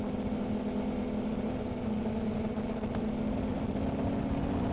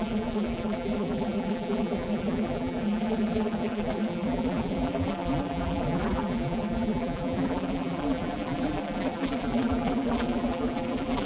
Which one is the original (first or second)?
first